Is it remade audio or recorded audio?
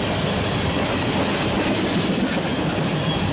recorded